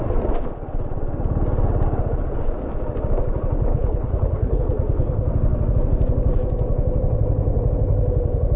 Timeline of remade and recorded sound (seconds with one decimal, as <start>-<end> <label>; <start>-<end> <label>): 0.0-3.7 recorded; 3.7-4.6 remade; 4.6-8.6 recorded